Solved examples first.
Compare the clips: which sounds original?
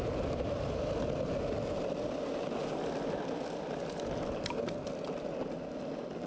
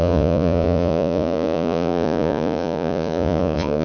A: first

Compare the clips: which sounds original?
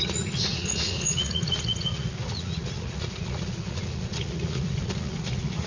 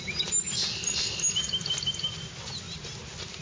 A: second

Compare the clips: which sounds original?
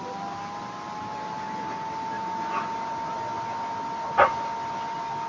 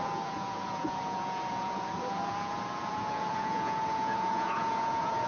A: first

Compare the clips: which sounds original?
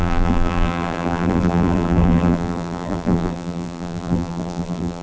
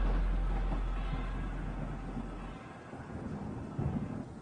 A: second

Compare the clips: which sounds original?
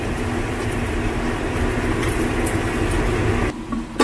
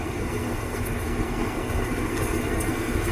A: first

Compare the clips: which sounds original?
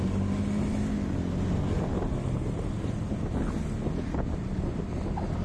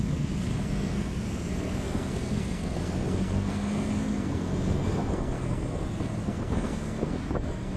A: first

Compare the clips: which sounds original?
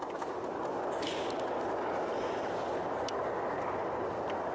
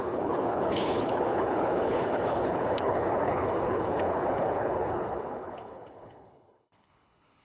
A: first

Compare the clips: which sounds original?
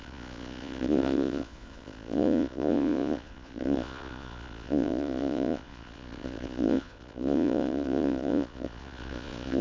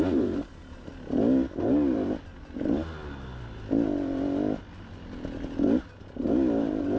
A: second